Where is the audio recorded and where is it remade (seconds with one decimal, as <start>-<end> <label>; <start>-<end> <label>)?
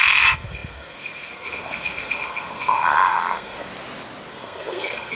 0.0-3.7 remade; 3.7-4.3 recorded; 4.3-5.1 remade